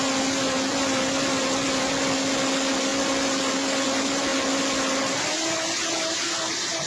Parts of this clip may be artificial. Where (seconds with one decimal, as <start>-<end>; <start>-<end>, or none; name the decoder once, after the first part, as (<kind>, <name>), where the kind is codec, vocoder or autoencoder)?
none